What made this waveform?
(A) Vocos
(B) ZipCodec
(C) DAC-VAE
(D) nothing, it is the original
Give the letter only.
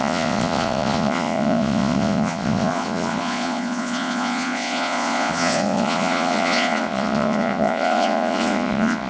A